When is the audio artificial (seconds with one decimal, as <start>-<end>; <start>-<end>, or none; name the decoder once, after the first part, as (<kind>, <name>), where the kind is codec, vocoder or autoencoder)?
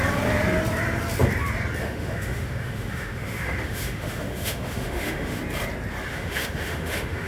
1.8-5.4 (autoencoder, DAC-VAE); 6.1-7.3